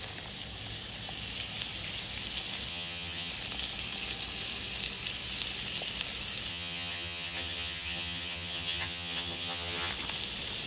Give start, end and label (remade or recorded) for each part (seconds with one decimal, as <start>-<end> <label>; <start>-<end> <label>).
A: 0.0-2.7 recorded; 2.7-3.3 remade; 3.3-6.5 recorded; 6.5-9.9 remade; 9.9-10.7 recorded